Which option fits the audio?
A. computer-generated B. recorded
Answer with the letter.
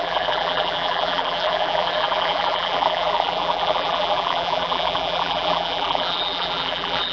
A